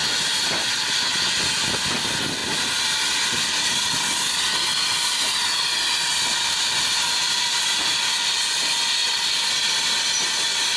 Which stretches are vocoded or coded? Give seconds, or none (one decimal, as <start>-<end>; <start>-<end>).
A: none